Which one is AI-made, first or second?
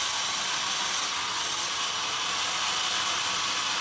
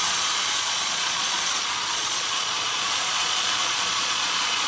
second